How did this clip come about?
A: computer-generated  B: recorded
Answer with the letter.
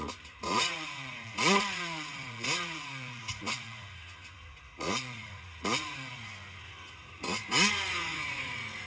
A